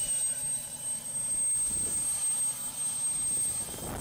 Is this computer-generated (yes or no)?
no